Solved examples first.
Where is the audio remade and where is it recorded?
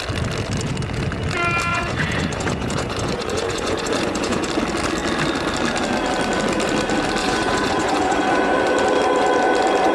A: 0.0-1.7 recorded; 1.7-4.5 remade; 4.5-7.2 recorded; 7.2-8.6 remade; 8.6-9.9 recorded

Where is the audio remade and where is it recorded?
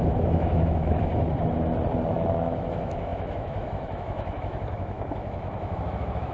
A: 0.0-1.1 remade; 1.1-2.1 recorded; 2.1-6.3 remade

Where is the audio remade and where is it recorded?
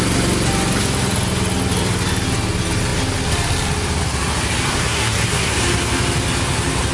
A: 0.0-4.7 recorded; 4.7-5.5 remade; 5.5-6.9 recorded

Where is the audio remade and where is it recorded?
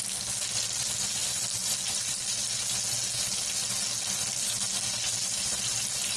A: 0.0-6.2 recorded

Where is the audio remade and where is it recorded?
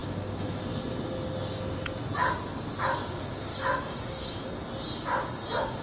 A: 0.0-0.6 remade; 0.6-3.5 recorded; 3.5-4.4 remade; 4.4-5.8 recorded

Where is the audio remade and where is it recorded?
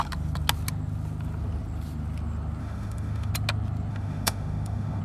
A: 0.0-2.6 recorded; 2.6-3.3 remade; 3.3-3.9 recorded; 3.9-5.0 remade